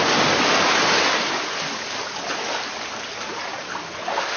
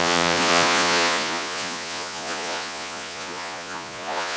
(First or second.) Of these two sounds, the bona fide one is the first